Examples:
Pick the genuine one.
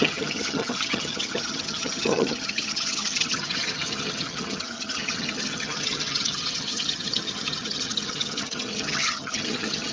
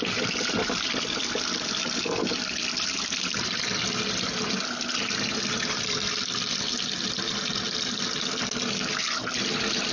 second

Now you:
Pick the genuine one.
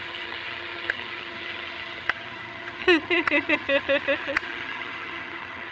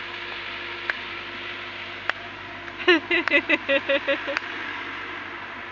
second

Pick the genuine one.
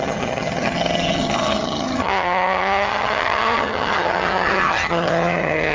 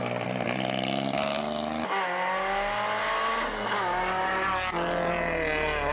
second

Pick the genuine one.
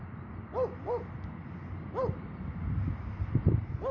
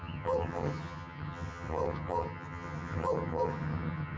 first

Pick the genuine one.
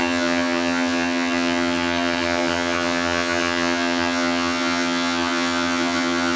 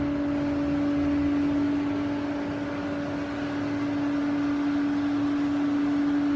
second